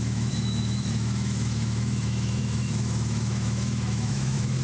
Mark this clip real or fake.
fake